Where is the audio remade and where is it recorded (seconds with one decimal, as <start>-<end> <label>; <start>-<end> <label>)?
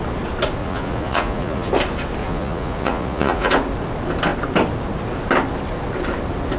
0.0-0.6 recorded; 0.6-1.7 remade; 1.7-2.2 recorded; 2.2-3.5 remade; 3.5-6.6 recorded